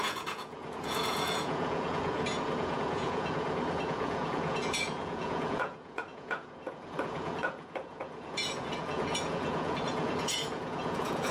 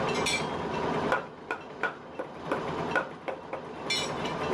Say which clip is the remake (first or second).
first